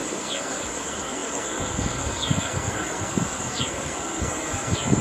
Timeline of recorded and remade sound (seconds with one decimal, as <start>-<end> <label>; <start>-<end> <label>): 0.0-5.0 remade